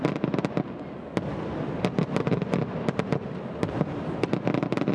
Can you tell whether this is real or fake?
real